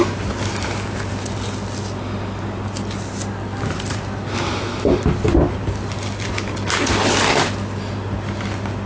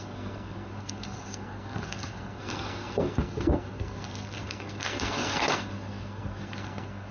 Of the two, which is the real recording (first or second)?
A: first